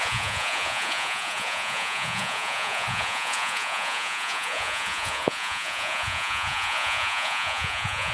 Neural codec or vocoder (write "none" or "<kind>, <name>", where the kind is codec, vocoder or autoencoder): vocoder, Vocos